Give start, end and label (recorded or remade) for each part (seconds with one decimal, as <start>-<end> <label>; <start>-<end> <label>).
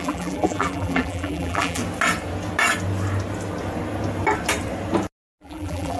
0.0-1.8 remade; 1.8-5.4 recorded; 5.4-6.0 remade